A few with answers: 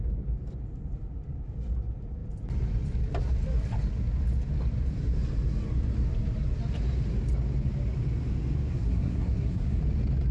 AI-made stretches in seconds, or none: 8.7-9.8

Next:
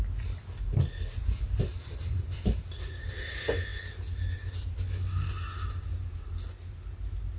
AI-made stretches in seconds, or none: none

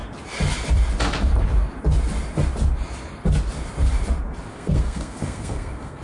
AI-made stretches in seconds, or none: 4.5-6.0

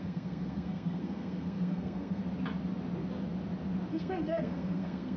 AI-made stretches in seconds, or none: 0.0-2.2; 3.9-5.2

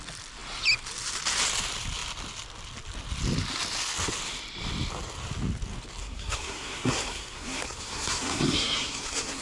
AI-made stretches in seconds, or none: 6.0-9.4

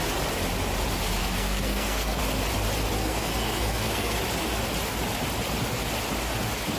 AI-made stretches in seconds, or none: 1.2-2.2; 3.0-4.2

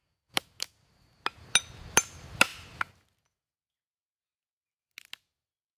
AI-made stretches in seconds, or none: none

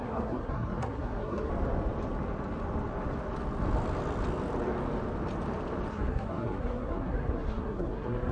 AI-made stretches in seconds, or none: 0.0-1.5; 5.9-8.3